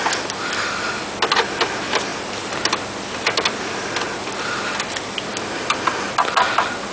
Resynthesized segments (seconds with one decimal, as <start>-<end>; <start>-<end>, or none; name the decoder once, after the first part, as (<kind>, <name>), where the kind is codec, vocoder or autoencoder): none